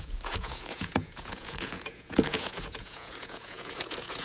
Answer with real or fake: fake